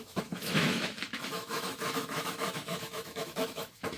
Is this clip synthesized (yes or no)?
yes